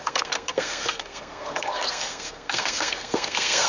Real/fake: fake